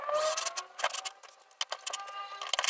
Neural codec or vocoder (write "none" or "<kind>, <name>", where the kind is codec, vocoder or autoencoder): none